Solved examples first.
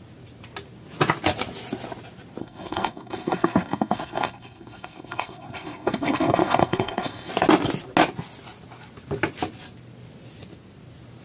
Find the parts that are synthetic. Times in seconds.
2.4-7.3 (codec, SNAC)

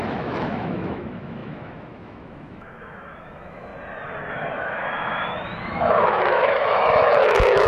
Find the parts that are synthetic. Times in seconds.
0.0-3.7 (autoencoder, DAC-VAE); 4.3-7.7